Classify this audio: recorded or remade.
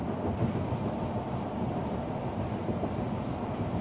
recorded